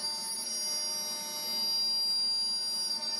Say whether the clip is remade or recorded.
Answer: recorded